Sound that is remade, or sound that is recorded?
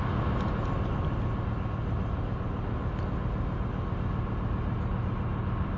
recorded